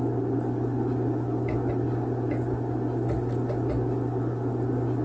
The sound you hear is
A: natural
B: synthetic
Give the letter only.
A